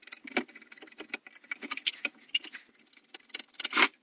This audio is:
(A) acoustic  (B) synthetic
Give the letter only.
A